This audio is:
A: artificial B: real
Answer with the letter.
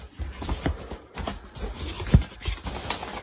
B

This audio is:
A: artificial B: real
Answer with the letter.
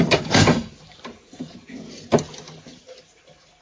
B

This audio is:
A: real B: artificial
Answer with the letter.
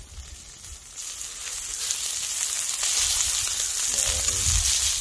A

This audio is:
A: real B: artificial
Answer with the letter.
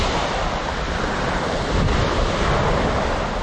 A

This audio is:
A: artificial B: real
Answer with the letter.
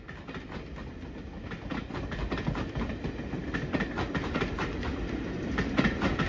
B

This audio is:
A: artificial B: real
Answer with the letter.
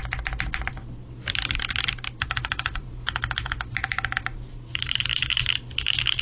B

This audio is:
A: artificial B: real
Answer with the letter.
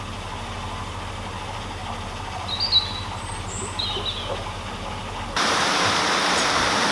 B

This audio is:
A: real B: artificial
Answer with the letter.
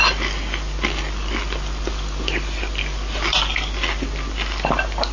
A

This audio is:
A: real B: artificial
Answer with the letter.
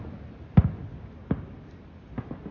A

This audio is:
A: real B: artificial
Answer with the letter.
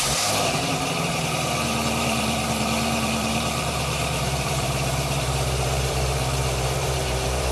B